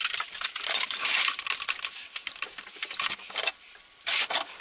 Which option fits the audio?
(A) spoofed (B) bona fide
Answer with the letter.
A